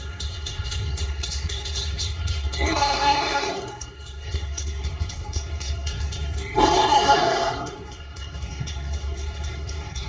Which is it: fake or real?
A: fake